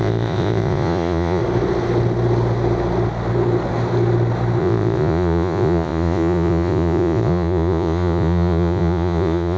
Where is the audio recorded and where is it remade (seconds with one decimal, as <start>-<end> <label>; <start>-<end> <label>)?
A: 0.0-1.4 remade; 1.4-4.6 recorded; 4.6-9.6 remade